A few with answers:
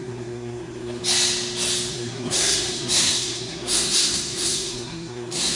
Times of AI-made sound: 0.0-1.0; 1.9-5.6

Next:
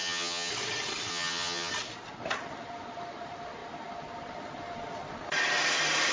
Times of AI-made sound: 0.0-0.5; 1.1-1.7

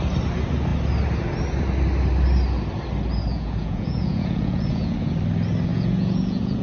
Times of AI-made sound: 3.3-5.1; 5.7-6.6

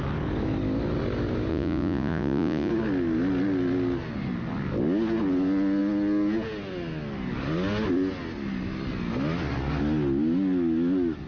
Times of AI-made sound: 1.5-2.7